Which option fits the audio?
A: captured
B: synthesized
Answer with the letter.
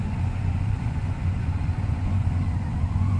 B